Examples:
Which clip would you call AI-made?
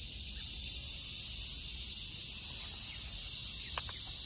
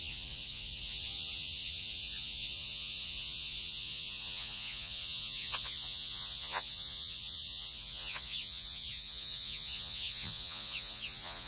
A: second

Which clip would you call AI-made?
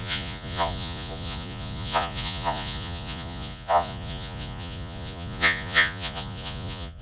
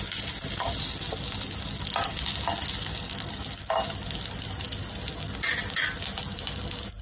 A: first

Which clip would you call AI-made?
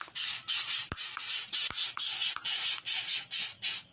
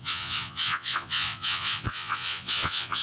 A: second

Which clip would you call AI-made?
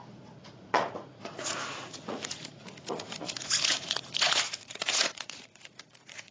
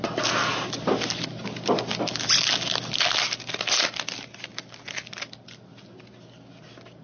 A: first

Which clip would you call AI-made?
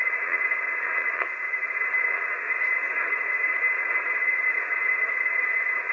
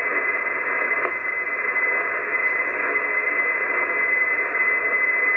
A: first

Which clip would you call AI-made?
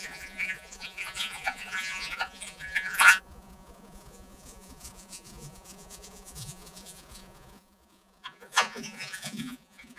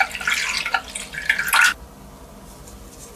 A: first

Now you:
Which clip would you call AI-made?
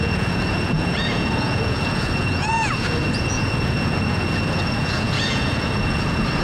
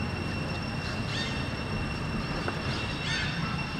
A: first